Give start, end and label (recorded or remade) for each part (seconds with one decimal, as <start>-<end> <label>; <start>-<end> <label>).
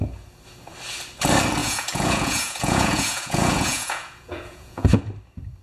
0.0-1.6 recorded; 1.6-5.0 remade; 5.0-5.6 recorded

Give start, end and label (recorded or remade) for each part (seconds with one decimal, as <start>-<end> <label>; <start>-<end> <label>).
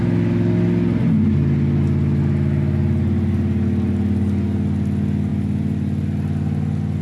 0.0-7.0 recorded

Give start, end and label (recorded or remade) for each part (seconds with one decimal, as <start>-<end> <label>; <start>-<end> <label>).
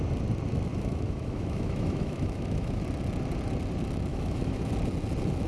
0.0-0.7 recorded; 0.7-2.8 remade; 2.8-4.1 recorded; 4.1-4.7 remade; 4.7-5.5 recorded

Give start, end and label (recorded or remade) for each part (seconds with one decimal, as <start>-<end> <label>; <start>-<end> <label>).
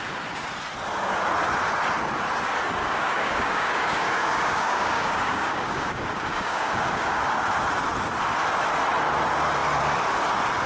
0.0-2.8 recorded; 2.8-7.2 remade; 7.2-10.7 recorded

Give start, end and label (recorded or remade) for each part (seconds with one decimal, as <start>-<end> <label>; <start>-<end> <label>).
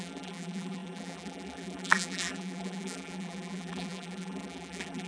0.0-5.1 remade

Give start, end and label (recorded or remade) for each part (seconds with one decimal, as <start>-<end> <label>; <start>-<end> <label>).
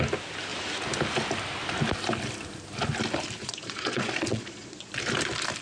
0.0-3.4 recorded; 3.4-4.9 remade; 4.9-5.6 recorded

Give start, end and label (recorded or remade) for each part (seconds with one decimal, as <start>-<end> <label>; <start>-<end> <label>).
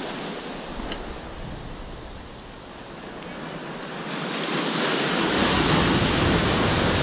0.0-7.0 recorded